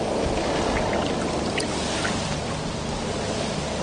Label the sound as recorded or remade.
recorded